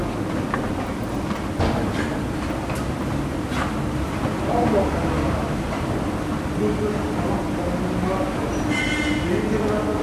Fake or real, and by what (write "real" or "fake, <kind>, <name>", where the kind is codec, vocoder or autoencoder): real